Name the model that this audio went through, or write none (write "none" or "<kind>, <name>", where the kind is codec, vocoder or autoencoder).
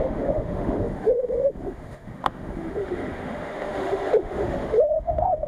autoencoder, DAC-VAE